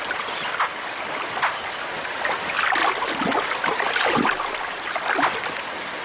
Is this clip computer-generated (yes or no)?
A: no